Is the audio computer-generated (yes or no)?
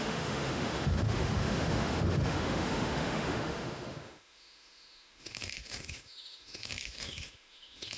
yes